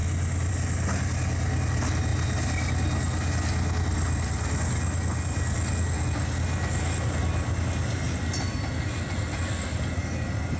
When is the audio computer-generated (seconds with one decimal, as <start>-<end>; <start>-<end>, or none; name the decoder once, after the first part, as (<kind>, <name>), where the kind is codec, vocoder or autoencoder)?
none